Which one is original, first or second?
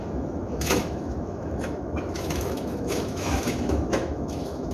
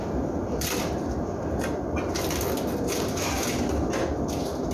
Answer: second